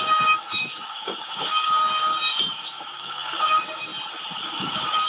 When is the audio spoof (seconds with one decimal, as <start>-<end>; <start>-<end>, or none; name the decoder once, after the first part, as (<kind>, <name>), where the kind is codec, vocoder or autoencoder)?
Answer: 0.0-3.9 (codec, DAC); 4.4-5.1